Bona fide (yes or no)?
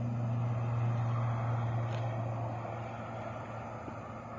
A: yes